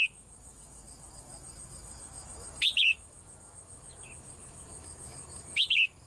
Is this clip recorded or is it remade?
remade